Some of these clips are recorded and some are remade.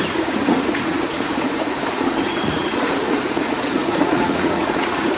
remade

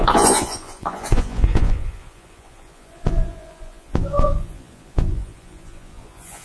remade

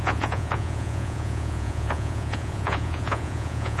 remade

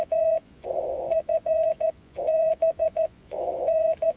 remade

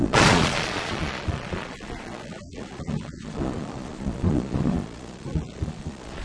remade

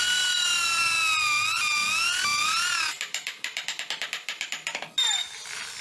recorded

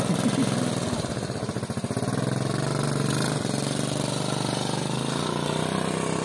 recorded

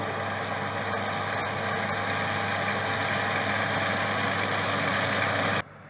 recorded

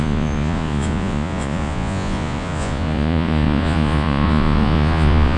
remade